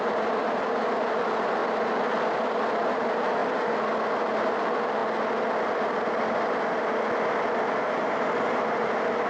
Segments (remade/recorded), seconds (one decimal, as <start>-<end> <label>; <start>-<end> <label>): 0.0-1.6 remade; 1.6-2.9 recorded; 2.9-3.4 remade; 3.4-4.4 recorded; 4.4-5.0 remade; 5.0-7.7 recorded; 7.7-9.3 remade